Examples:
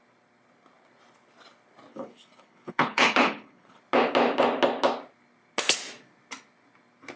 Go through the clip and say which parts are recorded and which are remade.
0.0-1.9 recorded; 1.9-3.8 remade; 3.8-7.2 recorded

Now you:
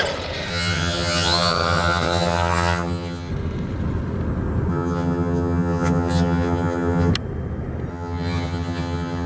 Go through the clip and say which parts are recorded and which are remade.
0.0-0.5 recorded; 0.5-3.3 remade; 3.3-4.7 recorded; 4.7-7.1 remade; 7.1-7.9 recorded; 7.9-9.3 remade